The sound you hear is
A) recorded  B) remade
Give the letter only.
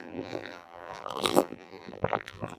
B